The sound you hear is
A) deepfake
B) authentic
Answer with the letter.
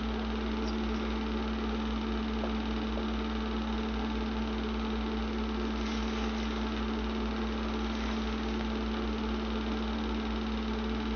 B